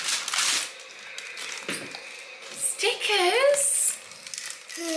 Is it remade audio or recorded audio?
recorded